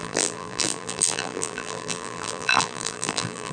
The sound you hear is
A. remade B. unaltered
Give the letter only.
A